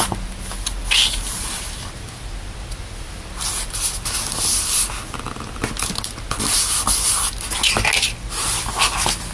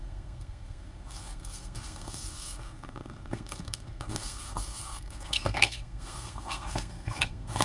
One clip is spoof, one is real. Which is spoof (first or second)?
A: second